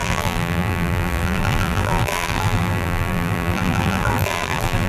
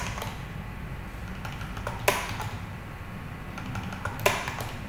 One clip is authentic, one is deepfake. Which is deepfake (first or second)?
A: first